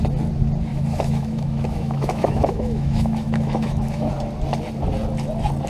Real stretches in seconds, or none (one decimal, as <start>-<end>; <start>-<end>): 0.0-0.7; 4.1-5.7